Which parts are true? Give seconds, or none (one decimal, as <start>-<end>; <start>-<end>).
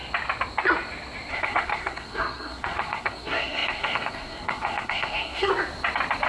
0.0-1.3; 5.5-6.3